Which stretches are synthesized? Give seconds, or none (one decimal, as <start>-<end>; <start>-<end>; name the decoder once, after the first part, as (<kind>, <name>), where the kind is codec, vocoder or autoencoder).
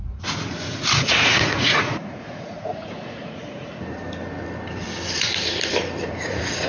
0.0-4.0 (vocoder, Vocos); 6.1-6.7